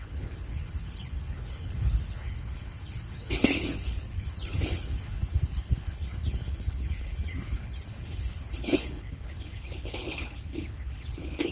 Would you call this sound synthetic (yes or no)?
yes